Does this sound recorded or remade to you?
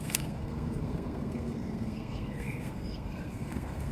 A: remade